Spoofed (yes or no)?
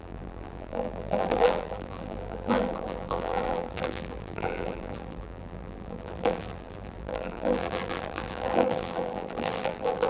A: yes